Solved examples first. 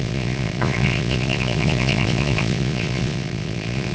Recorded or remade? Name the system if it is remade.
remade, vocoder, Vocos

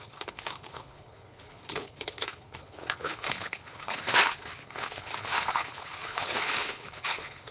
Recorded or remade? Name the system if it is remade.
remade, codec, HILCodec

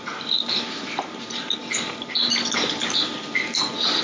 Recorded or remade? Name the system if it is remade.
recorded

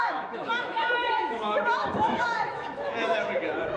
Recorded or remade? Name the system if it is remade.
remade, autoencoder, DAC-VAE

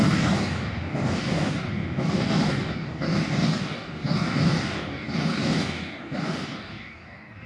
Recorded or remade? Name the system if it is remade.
remade, codec, DAC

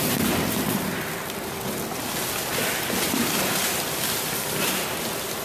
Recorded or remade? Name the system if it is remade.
recorded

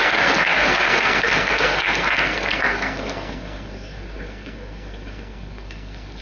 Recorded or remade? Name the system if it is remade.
remade, codec, SNAC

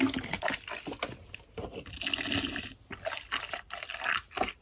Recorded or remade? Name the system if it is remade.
recorded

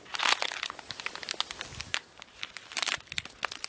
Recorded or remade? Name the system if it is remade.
recorded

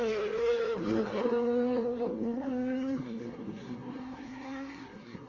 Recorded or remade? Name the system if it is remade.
remade, codec, SNAC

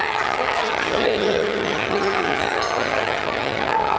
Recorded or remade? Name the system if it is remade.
remade, vocoder, HiFi-GAN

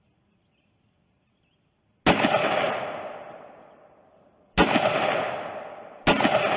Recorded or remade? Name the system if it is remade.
recorded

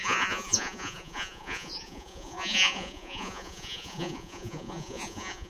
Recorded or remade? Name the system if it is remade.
remade, vocoder, Vocos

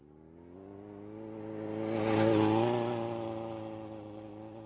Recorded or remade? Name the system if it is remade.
recorded